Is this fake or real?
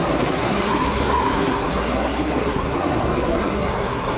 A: fake